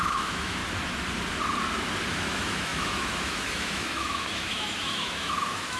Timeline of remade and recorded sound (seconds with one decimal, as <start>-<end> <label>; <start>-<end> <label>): 0.0-0.6 remade; 0.6-2.1 recorded; 2.1-5.8 remade

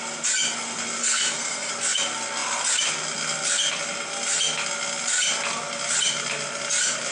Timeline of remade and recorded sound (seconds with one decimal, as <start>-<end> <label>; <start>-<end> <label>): 0.0-1.0 recorded; 1.0-1.7 remade; 1.7-7.1 recorded

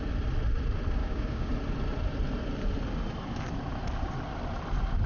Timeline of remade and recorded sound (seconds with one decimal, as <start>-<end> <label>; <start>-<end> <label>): 0.0-1.0 recorded; 1.0-1.5 remade; 1.5-5.1 recorded

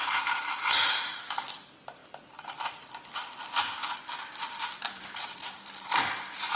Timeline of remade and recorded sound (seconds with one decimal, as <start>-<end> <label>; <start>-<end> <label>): 0.0-6.6 remade

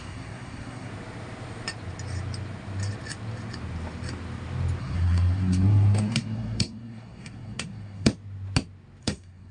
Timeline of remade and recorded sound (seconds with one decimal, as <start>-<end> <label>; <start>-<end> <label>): 0.0-0.9 remade; 0.9-4.8 recorded; 4.8-8.1 remade; 8.1-9.0 recorded; 9.0-9.5 remade

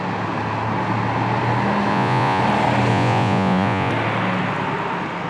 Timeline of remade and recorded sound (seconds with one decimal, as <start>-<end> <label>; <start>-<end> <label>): 0.0-1.9 recorded; 1.9-2.4 remade; 2.4-2.9 recorded; 2.9-3.9 remade; 3.9-5.3 recorded